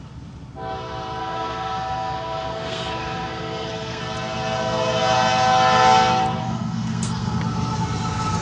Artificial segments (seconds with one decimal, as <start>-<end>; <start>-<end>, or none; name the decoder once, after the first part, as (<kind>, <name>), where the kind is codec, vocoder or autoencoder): 1.2-4.0 (codec, SNAC); 6.4-7.4